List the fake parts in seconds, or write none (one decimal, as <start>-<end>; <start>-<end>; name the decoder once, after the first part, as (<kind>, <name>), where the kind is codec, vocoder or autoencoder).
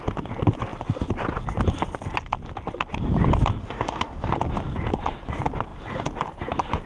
3.6-4.3 (autoencoder, DAC-VAE)